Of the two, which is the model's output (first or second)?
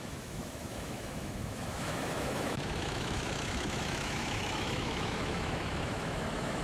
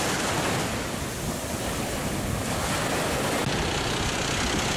first